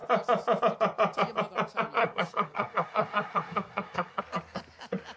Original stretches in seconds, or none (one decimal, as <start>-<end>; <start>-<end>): 0.0-2.0; 4.2-5.2